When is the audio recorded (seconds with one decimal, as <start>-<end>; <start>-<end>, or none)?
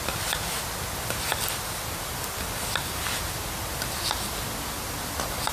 none